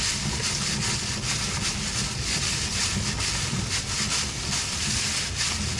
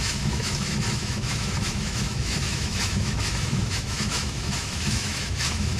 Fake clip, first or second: second